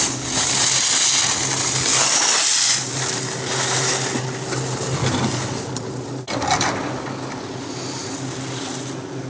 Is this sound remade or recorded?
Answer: recorded